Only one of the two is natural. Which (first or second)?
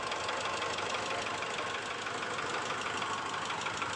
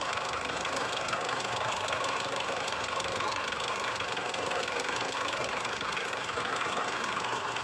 first